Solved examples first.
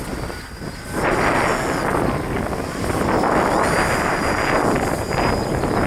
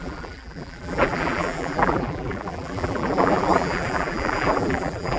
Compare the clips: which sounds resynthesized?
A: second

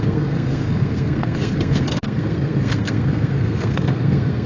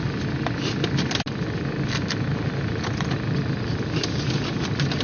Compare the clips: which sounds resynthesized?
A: first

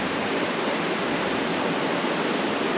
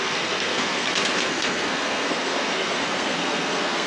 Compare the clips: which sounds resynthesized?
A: second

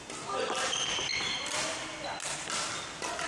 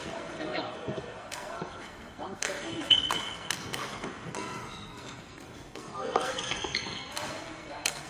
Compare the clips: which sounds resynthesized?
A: second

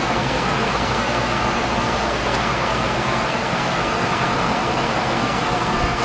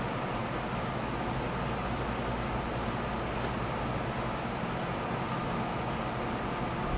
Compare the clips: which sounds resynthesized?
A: first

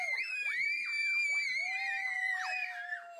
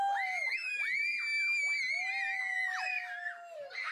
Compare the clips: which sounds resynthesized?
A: first